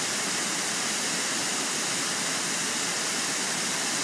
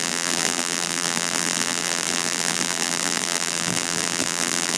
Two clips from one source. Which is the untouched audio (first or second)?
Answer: first